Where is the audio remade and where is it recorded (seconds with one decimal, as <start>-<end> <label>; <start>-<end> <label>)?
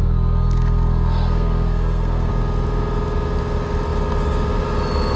0.0-2.3 remade; 2.3-5.2 recorded